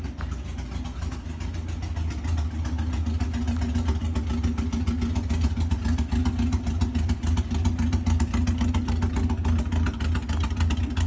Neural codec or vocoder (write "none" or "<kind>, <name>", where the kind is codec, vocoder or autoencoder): none